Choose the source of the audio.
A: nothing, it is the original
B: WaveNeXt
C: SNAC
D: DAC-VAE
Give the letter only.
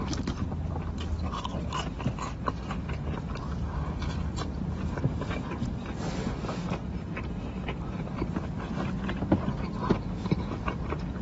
A